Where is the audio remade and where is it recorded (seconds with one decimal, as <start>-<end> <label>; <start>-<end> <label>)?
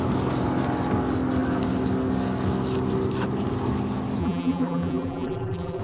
0.0-4.2 recorded; 4.2-5.8 remade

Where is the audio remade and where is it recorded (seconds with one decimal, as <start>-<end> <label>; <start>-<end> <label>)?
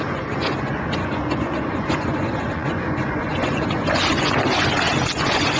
0.0-5.6 remade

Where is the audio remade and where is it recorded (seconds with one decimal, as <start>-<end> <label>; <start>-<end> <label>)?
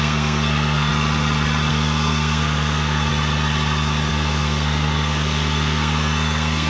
0.0-0.9 remade; 0.9-1.7 recorded; 1.7-3.1 remade; 3.1-4.1 recorded; 4.1-6.7 remade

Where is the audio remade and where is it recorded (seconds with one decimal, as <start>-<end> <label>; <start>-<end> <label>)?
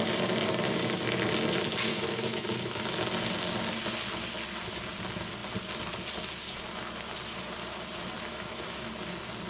0.0-1.9 recorded; 1.9-2.8 remade; 2.8-8.3 recorded; 8.3-8.9 remade; 8.9-9.5 recorded